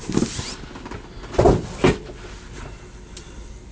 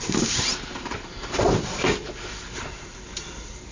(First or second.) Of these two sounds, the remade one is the second